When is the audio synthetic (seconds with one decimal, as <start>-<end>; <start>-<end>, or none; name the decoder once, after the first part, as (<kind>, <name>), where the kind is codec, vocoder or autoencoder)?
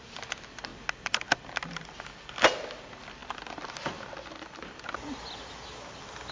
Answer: none